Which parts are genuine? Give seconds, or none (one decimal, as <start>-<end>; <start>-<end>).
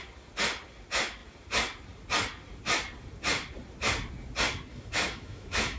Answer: 0.0-4.7